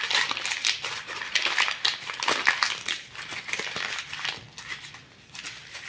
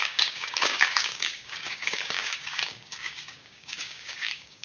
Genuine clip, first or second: first